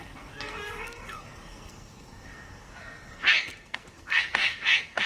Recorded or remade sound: remade